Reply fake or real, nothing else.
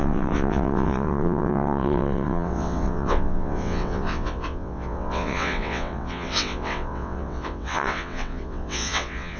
fake